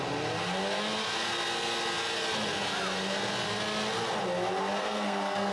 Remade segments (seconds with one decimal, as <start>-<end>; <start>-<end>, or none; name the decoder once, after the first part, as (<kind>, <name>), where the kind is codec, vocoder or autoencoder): 4.8-5.5 (codec, SNAC)